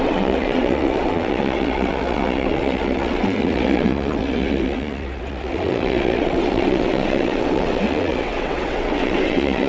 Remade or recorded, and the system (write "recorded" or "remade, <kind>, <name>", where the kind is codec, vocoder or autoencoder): remade, vocoder, WaveNeXt